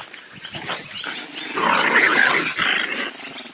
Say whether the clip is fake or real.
real